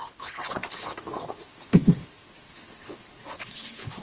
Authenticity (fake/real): fake